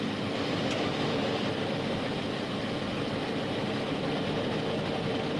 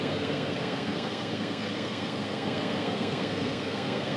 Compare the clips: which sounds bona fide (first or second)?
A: first